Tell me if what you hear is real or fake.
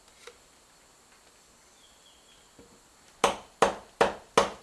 real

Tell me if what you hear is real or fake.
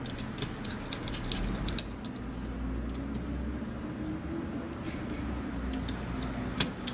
real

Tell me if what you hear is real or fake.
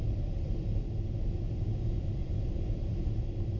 real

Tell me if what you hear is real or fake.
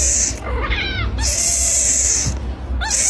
real